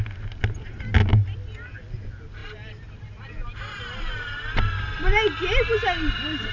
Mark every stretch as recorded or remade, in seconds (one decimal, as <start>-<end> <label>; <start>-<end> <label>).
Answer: 0.0-6.5 recorded